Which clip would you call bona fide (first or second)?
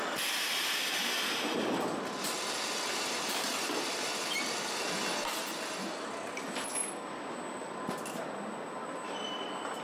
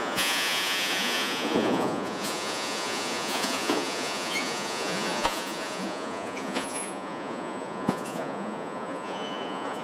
first